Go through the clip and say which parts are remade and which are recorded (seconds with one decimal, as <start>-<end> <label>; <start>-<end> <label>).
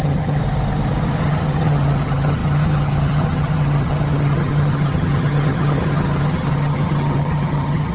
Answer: 0.0-0.4 remade; 0.4-1.2 recorded; 1.2-7.9 remade